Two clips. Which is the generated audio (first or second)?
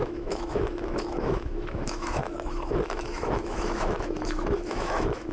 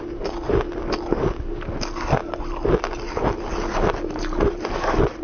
first